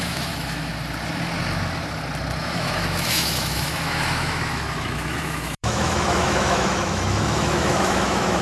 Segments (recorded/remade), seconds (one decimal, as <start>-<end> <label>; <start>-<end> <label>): 0.0-0.7 remade; 0.7-2.4 recorded; 2.4-8.4 remade